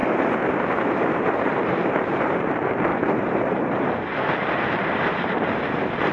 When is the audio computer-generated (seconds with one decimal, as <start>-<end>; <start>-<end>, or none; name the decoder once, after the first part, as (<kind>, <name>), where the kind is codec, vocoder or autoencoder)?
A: 0.0-6.1 (vocoder, BigVGAN v2)